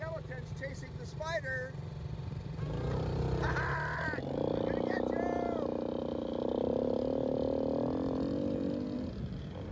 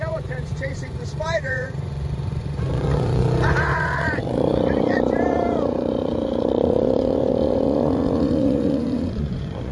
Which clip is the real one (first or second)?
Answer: first